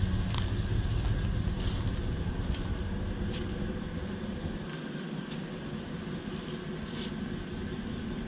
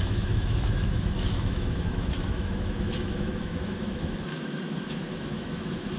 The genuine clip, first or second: first